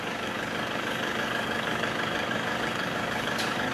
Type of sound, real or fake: fake